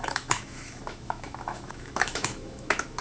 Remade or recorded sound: remade